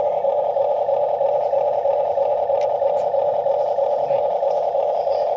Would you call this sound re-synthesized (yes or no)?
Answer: no